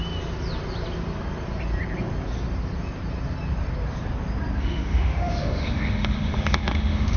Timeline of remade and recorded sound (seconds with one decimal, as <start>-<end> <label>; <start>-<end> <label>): 0.0-4.6 recorded; 4.6-7.2 remade

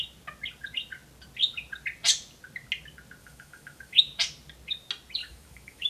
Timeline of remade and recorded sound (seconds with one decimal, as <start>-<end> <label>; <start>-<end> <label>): 0.0-3.2 recorded; 3.2-4.0 remade; 4.0-5.2 recorded; 5.2-5.9 remade

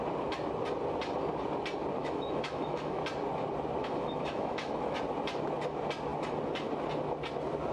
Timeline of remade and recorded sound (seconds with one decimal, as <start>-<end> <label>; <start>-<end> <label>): 0.0-2.0 recorded; 2.0-3.0 remade; 3.0-3.8 recorded; 3.8-5.0 remade; 5.0-7.7 recorded

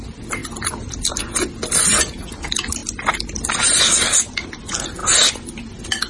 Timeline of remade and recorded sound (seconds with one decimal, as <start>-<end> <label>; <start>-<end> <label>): 0.0-6.1 recorded

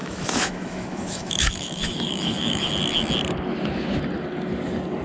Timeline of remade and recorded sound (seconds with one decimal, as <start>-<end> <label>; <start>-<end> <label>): 0.0-2.7 remade; 2.7-5.0 recorded

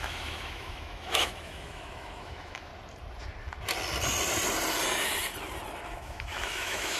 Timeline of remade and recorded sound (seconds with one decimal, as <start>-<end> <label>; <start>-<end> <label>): 0.0-2.7 remade; 2.7-5.9 recorded; 5.9-7.0 remade

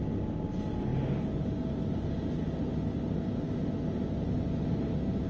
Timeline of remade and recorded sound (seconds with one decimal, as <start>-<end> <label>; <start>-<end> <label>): 0.0-5.3 recorded

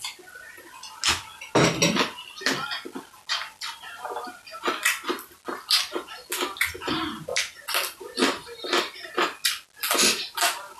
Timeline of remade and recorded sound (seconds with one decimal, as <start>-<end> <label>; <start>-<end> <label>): 0.0-10.8 recorded